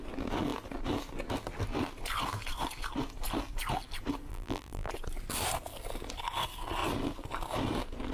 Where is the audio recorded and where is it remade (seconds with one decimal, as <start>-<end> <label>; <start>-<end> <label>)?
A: 0.0-4.3 recorded; 4.3-4.9 remade; 4.9-8.1 recorded